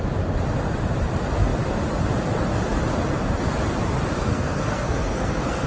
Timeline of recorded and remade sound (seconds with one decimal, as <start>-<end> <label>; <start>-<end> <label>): 0.0-4.2 recorded; 4.2-5.7 remade